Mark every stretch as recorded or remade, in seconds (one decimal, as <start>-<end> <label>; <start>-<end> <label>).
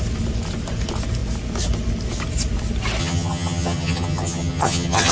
0.0-3.0 recorded; 3.0-5.1 remade